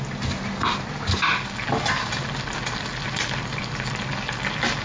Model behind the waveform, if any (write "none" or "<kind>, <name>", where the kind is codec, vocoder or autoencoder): none